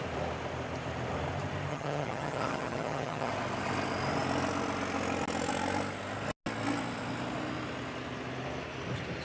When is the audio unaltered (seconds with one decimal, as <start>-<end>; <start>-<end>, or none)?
0.0-1.7; 3.3-9.2